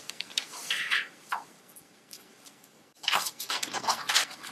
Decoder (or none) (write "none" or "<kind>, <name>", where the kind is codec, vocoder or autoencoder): codec, SNAC